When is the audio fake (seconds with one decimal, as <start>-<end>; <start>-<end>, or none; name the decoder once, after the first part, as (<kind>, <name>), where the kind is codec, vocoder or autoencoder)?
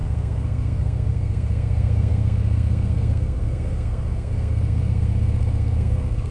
0.0-6.3 (codec, SNAC)